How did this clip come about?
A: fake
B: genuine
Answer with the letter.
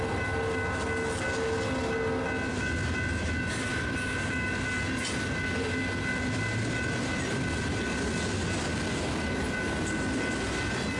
B